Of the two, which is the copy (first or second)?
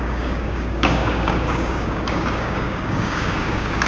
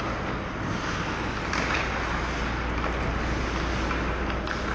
first